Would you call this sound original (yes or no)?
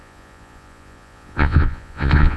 no